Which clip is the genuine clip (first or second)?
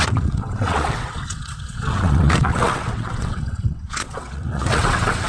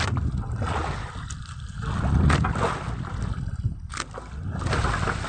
second